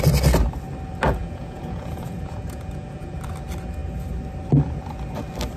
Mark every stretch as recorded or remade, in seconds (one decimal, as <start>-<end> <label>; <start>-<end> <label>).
0.0-1.2 recorded; 1.2-3.2 remade; 3.2-5.6 recorded